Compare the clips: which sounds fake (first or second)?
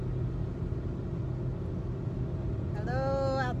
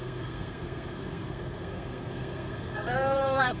second